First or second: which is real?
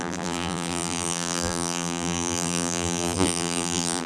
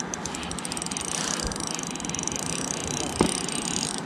second